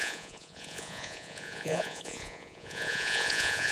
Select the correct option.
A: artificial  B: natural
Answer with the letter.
A